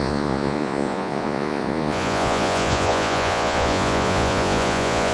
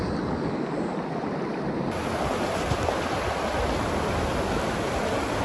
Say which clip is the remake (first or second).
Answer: first